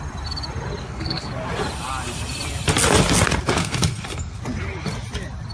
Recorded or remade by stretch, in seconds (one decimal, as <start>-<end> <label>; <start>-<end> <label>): 0.0-0.8 recorded; 0.8-1.3 remade; 1.3-3.6 recorded; 3.6-4.4 remade; 4.4-5.5 recorded